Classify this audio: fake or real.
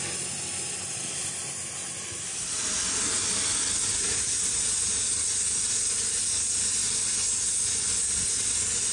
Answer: real